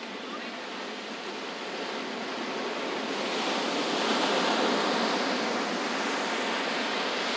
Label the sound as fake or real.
real